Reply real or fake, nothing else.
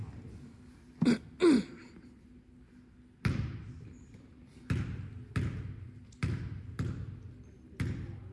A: real